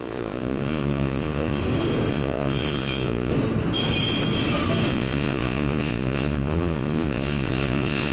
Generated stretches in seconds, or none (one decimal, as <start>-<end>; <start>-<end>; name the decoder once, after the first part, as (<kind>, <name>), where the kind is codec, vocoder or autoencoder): 0.0-1.6 (vocoder, Vocos); 2.1-3.3; 4.9-8.1

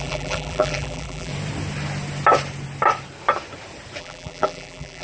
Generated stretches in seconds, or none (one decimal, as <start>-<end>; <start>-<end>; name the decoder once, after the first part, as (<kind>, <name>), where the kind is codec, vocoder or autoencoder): 0.0-1.3 (vocoder, BigVGAN v2); 4.0-5.0

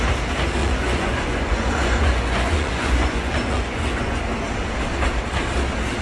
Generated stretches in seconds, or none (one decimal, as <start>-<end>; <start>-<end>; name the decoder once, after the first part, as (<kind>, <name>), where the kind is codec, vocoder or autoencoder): 0.6-4.2 (vocoder, Vocos)

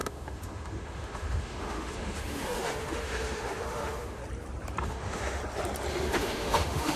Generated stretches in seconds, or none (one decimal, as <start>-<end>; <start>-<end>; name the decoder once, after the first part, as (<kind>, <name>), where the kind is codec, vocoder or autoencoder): 0.0-4.2 (autoencoder, DAC-VAE); 4.8-5.4; 5.9-7.0

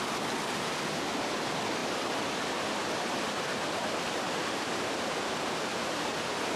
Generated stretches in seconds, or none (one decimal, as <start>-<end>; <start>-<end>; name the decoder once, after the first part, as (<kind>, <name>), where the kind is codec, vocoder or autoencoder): none

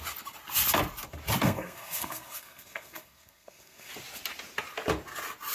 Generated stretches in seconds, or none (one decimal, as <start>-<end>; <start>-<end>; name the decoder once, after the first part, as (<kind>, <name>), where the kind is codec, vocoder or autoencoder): 1.4-3.9 (codec, SNAC)

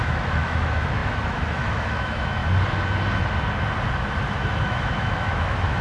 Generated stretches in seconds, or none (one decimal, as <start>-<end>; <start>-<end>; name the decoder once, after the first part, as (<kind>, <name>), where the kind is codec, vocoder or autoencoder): 0.0-2.4 (autoencoder, DAC-VAE); 4.6-5.8